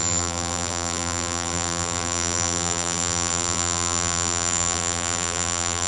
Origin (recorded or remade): remade